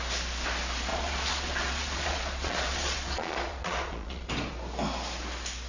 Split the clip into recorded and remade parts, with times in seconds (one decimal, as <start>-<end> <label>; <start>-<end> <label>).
0.0-0.9 recorded; 0.9-4.3 remade; 4.3-5.7 recorded